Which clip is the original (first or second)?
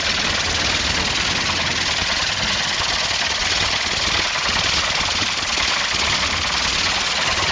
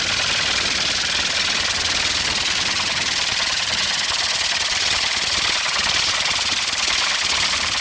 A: first